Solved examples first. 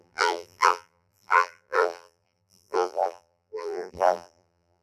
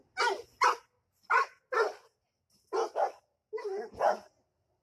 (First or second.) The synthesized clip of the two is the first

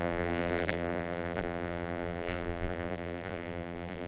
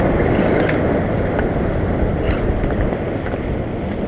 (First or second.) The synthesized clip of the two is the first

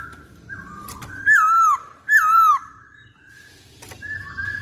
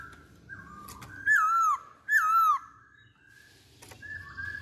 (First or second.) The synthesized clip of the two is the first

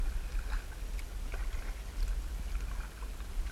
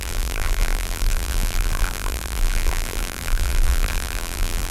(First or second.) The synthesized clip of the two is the second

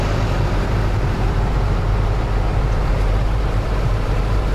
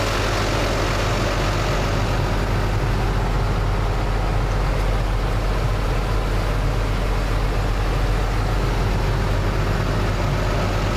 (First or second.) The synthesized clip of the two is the first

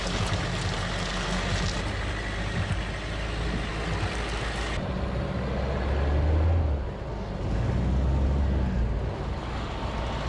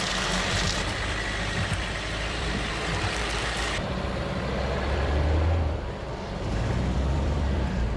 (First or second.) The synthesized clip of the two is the second